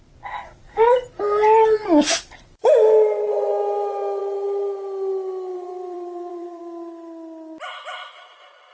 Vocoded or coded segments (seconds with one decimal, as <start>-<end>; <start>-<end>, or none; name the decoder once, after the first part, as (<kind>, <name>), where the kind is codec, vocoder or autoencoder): 5.5-6.6 (vocoder, BigVGAN v2)